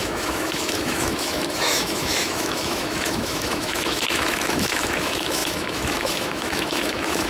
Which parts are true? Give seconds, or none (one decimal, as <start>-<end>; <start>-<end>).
none